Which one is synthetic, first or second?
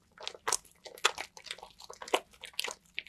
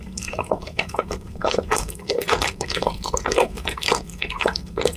second